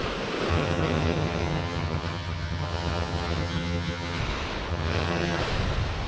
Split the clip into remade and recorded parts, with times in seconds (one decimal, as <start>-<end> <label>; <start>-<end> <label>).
0.0-0.5 recorded; 0.5-4.2 remade; 4.2-4.7 recorded; 4.7-5.4 remade; 5.4-6.1 recorded